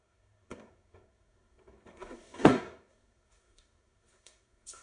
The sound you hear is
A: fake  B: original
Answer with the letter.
A